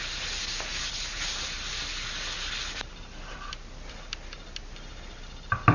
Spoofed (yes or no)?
no